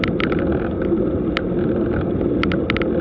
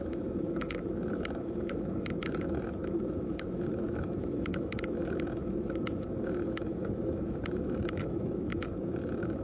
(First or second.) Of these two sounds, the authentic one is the first